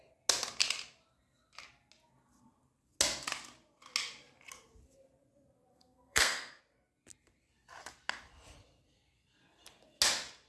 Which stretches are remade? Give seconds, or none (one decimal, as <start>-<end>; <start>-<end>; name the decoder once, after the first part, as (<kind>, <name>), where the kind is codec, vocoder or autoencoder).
5.7-6.6 (codec, SNAC)